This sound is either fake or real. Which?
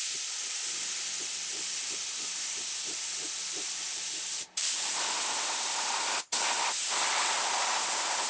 real